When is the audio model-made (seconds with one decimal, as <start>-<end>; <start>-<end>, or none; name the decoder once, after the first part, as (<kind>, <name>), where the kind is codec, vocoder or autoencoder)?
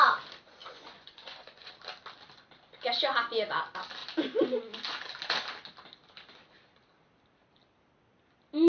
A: 0.6-1.7 (vocoder, Vocos)